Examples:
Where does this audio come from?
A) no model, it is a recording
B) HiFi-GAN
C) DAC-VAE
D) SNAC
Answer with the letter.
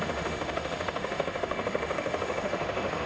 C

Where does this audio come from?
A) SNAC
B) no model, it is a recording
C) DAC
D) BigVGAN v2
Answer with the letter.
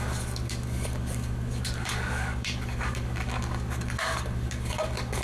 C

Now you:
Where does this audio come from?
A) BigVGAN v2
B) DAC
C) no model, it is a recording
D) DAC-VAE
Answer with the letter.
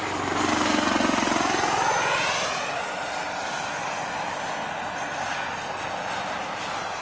C